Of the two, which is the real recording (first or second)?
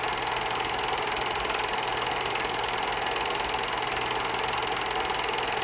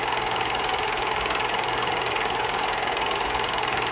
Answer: first